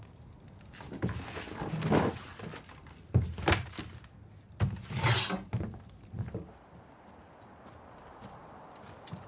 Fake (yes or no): no